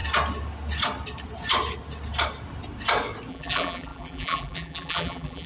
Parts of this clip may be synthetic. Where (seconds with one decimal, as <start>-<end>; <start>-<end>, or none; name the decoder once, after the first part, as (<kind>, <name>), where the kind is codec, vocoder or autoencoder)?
3.3-5.5 (vocoder, BigVGAN v2)